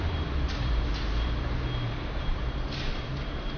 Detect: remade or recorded remade